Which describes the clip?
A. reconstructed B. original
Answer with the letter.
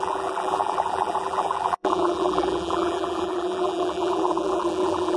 A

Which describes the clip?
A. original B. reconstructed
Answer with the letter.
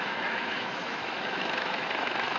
B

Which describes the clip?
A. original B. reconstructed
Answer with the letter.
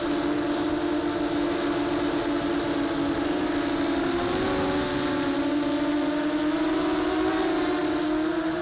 A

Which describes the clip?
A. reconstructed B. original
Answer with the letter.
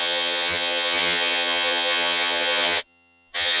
A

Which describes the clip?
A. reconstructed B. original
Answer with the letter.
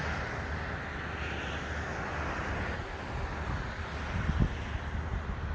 B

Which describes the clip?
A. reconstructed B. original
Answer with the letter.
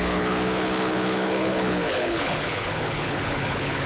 A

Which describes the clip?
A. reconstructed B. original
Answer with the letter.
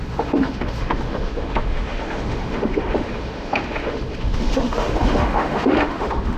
A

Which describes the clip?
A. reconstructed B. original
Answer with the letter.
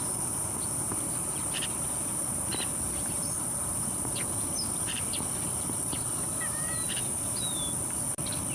A